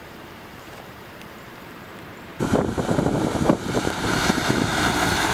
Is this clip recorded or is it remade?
remade